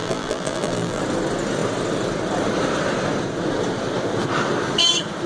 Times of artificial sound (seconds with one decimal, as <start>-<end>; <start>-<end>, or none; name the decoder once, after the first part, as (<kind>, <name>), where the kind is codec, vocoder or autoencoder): 0.0-1.0 (vocoder, BigVGAN v2)